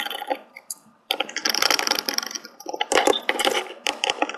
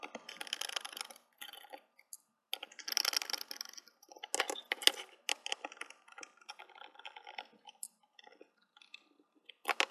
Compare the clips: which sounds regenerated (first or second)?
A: first